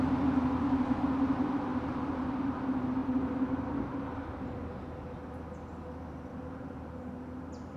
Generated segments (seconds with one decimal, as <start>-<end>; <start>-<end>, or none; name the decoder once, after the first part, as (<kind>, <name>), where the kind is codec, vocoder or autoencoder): 1.7-2.3 (vocoder, BigVGAN v2); 3.0-4.0; 6.3-7.1